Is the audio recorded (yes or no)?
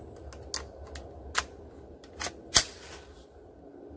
yes